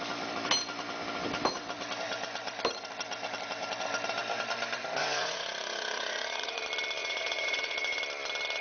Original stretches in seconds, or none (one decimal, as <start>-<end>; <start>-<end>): 0.0-5.0; 6.6-7.0; 8.0-8.6